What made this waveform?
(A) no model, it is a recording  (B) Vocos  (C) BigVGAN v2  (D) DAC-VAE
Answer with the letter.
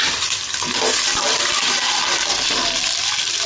C